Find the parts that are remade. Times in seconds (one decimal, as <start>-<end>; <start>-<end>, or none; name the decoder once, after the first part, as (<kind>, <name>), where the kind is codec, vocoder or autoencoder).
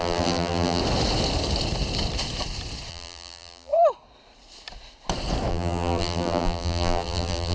0.0-0.8 (vocoder, BigVGAN v2); 2.9-3.7; 5.5-7.5